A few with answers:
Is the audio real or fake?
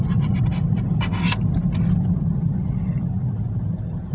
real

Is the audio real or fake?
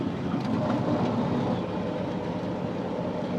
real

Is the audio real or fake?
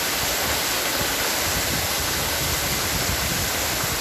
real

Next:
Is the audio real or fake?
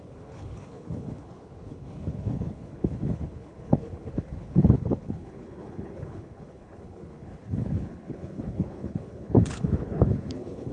fake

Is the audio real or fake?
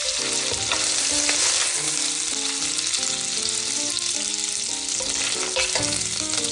real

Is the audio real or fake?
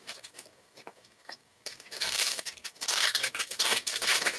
fake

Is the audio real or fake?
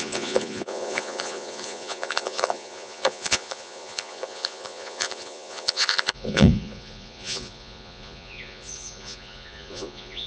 fake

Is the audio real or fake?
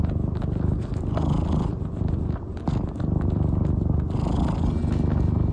real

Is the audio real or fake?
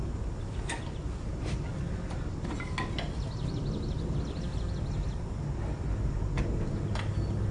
real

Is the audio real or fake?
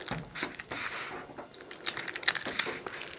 real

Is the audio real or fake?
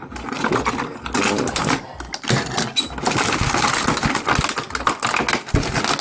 real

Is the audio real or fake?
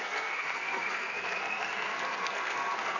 fake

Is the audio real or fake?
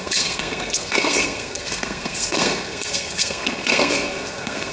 fake